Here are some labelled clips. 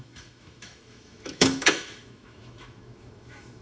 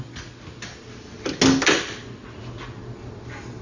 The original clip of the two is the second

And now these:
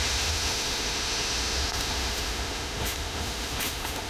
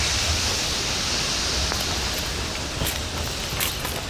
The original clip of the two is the second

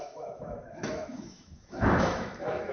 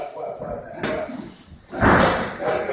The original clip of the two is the second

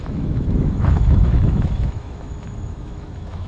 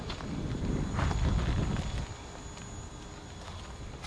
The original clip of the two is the second